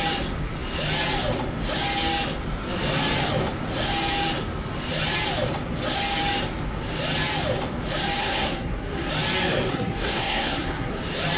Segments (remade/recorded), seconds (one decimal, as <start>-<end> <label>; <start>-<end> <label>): 0.0-8.2 recorded; 8.2-9.1 remade; 9.1-9.7 recorded; 9.7-10.9 remade; 10.9-11.4 recorded